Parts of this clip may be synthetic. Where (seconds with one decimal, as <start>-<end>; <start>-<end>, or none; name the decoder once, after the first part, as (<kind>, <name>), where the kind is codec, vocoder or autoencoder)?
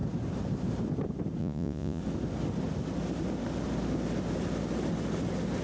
1.4-2.0 (vocoder, Vocos)